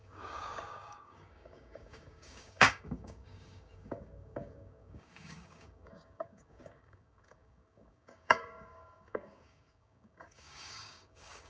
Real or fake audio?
fake